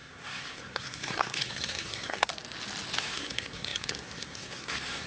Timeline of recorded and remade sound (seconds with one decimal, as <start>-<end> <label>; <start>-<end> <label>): 0.0-2.3 remade; 2.3-3.0 recorded; 3.0-5.1 remade